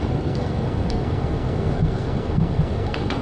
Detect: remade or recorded remade